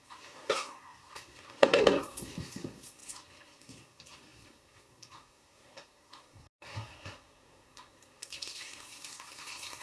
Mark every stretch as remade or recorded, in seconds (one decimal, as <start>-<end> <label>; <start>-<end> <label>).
0.0-9.8 remade